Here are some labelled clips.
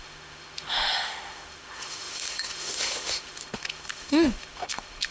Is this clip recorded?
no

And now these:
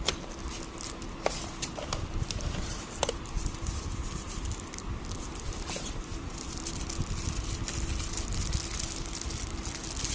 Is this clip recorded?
yes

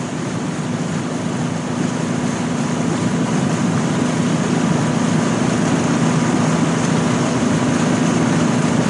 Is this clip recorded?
yes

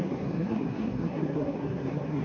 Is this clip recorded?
no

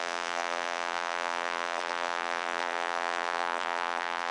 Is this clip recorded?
no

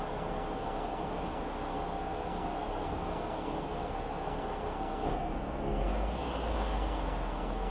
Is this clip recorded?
no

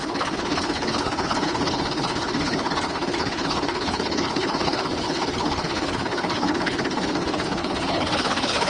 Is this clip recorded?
no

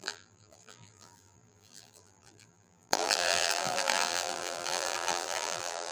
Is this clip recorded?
no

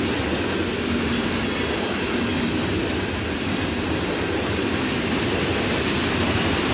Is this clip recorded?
yes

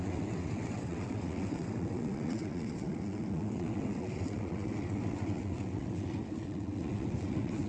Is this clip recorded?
no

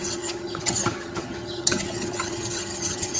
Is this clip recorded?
no